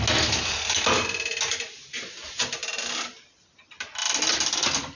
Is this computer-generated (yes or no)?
no